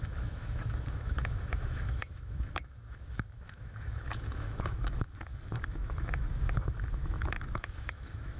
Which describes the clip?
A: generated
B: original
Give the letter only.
A